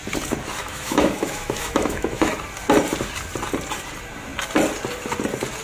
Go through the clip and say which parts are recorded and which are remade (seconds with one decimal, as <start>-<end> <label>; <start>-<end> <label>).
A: 0.0-0.6 recorded; 0.6-2.3 remade; 2.3-5.6 recorded